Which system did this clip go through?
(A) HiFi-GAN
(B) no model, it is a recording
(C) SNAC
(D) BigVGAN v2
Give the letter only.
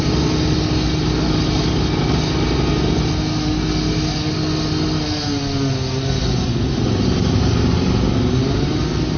B